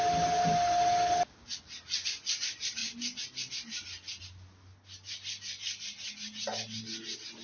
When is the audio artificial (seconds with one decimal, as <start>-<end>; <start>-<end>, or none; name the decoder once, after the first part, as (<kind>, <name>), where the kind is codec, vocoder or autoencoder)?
none